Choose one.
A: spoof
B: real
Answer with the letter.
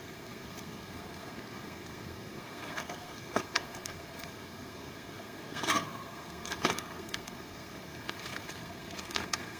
A